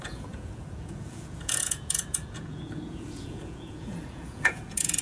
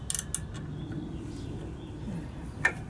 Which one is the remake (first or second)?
first